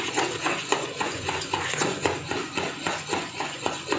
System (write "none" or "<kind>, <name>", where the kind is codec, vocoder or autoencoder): vocoder, Vocos